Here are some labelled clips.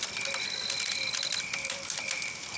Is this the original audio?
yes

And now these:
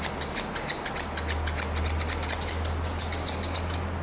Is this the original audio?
yes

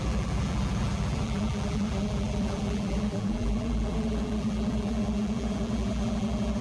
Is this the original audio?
no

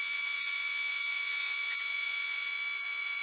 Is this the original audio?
no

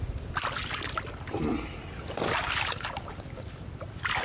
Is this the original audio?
yes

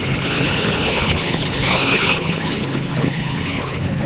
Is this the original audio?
no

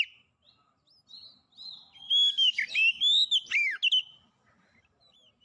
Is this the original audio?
yes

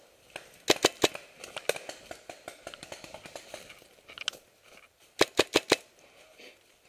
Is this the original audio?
yes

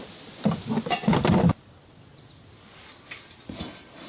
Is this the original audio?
yes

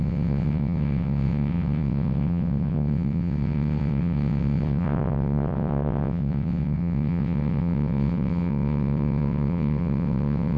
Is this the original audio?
no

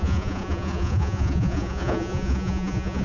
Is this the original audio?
no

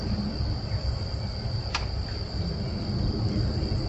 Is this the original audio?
no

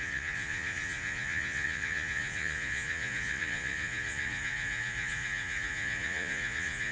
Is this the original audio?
no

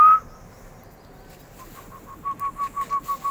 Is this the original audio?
yes